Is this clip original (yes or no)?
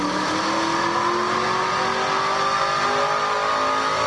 yes